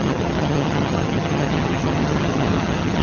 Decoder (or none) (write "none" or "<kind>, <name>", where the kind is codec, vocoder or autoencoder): vocoder, HiFi-GAN